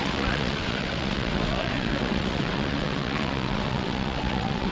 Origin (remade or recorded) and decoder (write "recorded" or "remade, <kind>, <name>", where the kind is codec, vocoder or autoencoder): remade, vocoder, WaveNeXt